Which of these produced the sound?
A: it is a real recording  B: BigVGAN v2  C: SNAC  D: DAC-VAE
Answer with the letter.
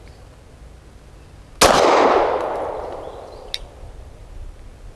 A